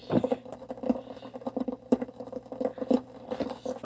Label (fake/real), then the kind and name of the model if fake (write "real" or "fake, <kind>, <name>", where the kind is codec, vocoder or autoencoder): real